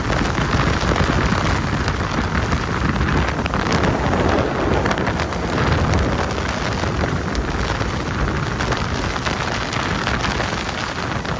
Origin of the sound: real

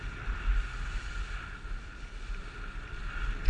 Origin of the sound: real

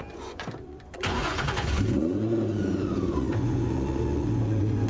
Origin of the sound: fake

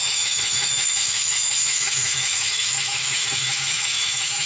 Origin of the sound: fake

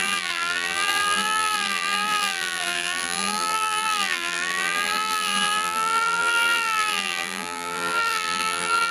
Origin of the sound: fake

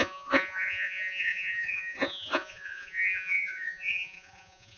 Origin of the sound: fake